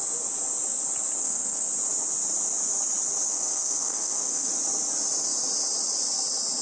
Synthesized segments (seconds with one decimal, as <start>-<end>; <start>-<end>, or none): 1.2-1.7; 3.3-4.5